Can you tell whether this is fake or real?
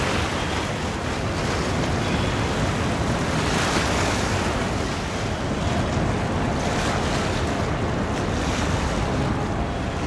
real